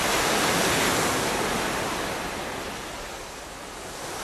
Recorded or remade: recorded